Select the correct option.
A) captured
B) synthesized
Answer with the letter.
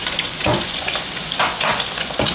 B